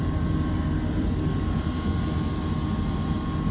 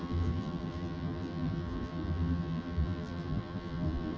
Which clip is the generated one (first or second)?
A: second